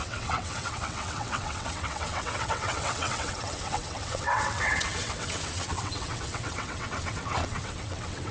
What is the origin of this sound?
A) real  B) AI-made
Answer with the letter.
B